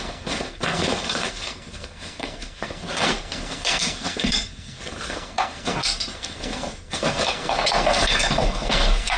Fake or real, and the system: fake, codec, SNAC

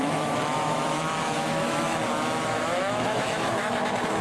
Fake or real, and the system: fake, autoencoder, DAC-VAE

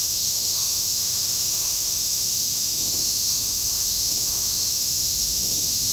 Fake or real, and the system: fake, autoencoder, DAC-VAE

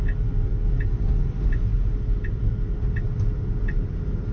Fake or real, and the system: real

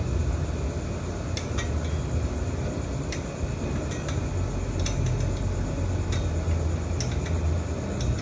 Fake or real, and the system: real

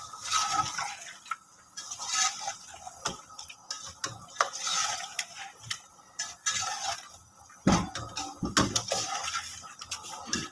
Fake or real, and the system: real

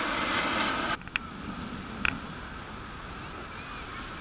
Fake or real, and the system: real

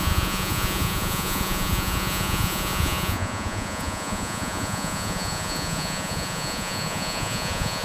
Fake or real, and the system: fake, vocoder, Vocos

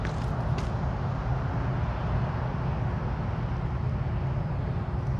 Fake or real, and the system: real